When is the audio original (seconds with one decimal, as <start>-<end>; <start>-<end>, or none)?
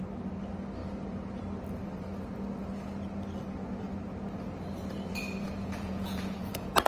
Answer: 0.0-5.6